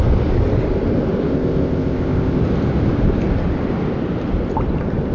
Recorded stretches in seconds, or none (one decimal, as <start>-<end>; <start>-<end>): 0.0-1.3; 2.4-5.1